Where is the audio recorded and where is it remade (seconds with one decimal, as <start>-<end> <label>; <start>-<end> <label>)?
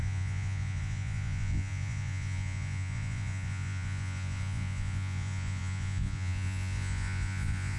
0.0-7.8 remade